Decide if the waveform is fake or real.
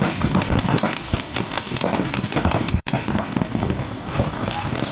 fake